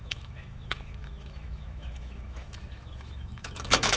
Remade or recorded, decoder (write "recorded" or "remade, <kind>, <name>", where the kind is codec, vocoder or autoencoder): remade, autoencoder, DAC-VAE